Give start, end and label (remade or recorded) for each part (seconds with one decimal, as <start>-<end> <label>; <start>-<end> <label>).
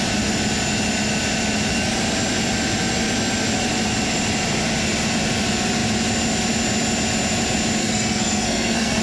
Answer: 0.0-7.8 recorded; 7.8-9.0 remade